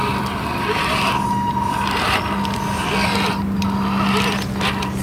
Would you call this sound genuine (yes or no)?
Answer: yes